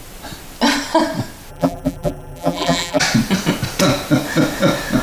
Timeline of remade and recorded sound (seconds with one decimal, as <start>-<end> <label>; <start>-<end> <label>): 0.0-1.5 recorded; 1.5-3.0 remade; 3.0-5.0 recorded